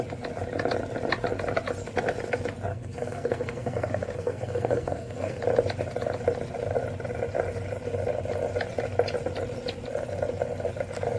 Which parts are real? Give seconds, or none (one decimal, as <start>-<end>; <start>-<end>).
0.0-2.7; 5.4-11.2